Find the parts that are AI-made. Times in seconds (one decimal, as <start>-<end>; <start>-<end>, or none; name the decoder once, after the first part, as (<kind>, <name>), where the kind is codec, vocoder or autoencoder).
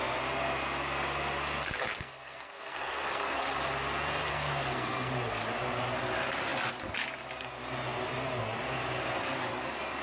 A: 1.9-3.4 (codec, SNAC); 4.3-5.1